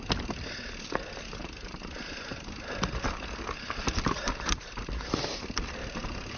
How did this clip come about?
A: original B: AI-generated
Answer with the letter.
A